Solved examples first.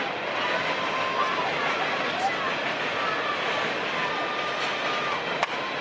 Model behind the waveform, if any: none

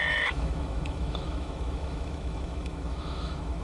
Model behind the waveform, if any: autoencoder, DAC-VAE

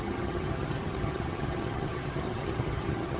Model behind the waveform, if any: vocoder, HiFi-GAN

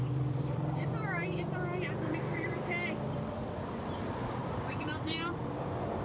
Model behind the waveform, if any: vocoder, BigVGAN v2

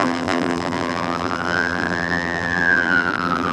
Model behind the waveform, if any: vocoder, BigVGAN v2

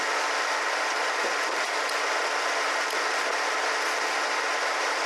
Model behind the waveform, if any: none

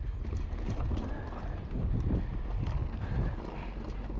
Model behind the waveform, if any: none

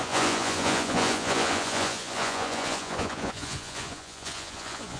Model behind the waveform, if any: vocoder, Vocos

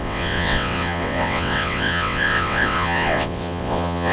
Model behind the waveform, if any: vocoder, WaveNeXt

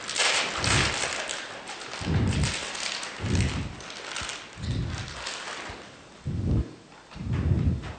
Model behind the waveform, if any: none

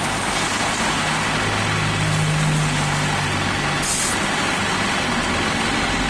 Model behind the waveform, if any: none